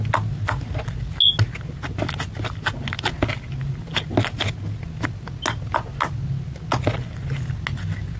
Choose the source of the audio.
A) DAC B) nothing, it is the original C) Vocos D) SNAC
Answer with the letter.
B